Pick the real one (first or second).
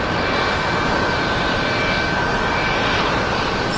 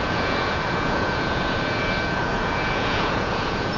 first